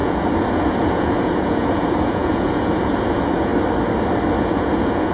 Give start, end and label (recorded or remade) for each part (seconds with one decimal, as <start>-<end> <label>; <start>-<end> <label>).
0.0-3.5 remade; 3.5-4.4 recorded; 4.4-5.1 remade